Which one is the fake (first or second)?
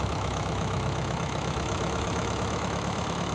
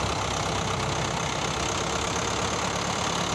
first